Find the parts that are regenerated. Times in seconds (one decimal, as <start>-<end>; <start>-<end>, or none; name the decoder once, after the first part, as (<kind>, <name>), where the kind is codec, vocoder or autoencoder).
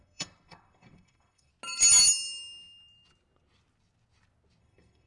0.0-1.5 (codec, SNAC); 4.6-5.1